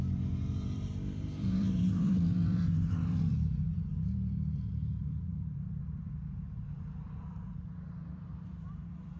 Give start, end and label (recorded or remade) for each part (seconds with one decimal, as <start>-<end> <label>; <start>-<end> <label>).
0.0-9.2 remade